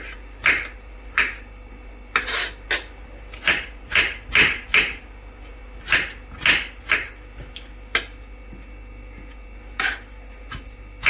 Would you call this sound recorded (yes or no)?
yes